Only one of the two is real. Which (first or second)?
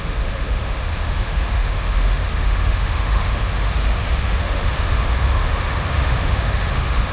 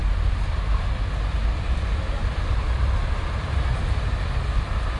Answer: second